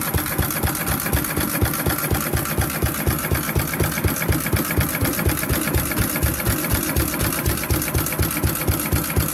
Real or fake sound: real